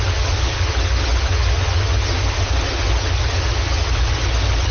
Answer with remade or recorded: remade